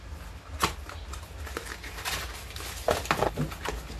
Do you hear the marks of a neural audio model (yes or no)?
no